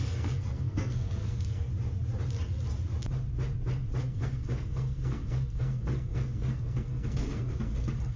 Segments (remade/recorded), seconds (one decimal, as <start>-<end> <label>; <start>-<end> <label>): 0.0-1.7 remade; 1.7-4.0 recorded; 4.0-8.2 remade